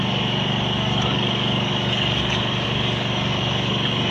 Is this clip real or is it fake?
fake